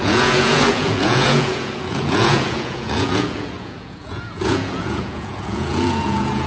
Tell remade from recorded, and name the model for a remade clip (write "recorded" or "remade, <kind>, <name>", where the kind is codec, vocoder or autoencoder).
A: remade, vocoder, Vocos